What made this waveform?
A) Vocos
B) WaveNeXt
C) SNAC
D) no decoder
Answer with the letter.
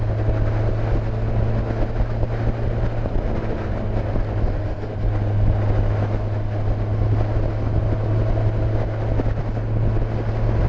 D